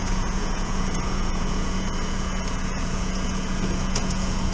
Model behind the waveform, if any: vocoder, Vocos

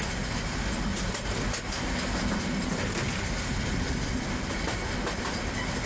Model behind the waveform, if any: none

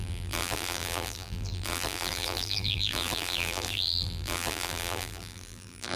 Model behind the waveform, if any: vocoder, BigVGAN v2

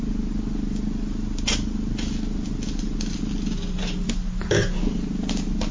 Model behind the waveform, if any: none